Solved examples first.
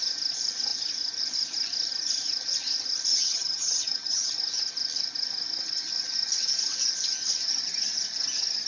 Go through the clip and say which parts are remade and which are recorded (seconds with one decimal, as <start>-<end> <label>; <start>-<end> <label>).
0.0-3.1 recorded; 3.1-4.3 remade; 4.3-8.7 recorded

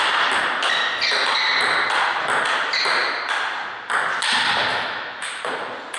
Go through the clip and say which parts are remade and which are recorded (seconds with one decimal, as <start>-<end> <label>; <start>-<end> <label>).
0.0-4.7 recorded; 4.7-5.4 remade; 5.4-6.0 recorded

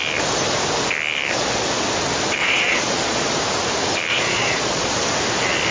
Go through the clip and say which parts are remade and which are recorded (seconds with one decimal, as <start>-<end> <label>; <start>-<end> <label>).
0.0-2.4 recorded; 2.4-3.3 remade; 3.3-4.1 recorded; 4.1-4.9 remade; 4.9-5.7 recorded

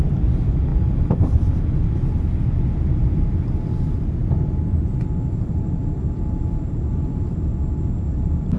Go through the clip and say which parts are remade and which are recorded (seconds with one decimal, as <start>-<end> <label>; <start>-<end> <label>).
0.0-0.7 remade; 0.7-5.5 recorded; 5.5-7.5 remade; 7.5-8.1 recorded; 8.1-8.6 remade

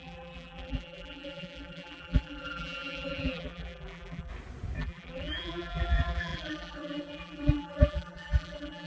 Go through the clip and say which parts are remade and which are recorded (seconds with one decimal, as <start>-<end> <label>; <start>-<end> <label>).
0.0-4.3 remade; 4.3-4.8 recorded; 4.8-8.9 remade